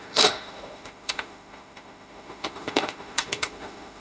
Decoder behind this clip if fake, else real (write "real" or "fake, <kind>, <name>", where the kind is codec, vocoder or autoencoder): fake, autoencoder, DAC-VAE